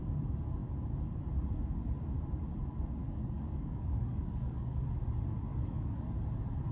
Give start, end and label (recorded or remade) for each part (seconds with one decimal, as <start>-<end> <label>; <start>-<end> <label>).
0.0-3.0 recorded; 3.0-4.8 remade; 4.8-5.5 recorded; 5.5-6.1 remade; 6.1-6.7 recorded